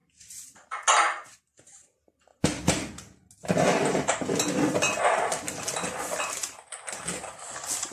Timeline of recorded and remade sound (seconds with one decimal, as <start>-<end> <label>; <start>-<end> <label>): 0.0-7.9 recorded